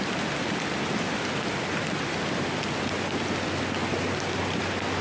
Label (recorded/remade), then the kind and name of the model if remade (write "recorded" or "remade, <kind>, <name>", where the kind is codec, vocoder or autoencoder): recorded